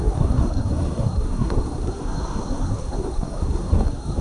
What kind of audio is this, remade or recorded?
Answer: remade